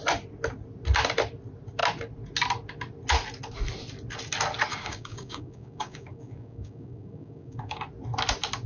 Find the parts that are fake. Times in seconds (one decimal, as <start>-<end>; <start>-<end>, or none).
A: 4.7-7.8